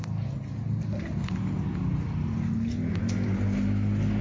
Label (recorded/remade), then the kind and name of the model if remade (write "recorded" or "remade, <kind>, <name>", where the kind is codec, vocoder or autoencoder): recorded